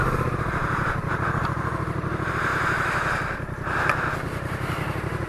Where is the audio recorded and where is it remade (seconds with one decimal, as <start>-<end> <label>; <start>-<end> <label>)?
0.0-1.1 remade; 1.1-2.5 recorded; 2.5-5.3 remade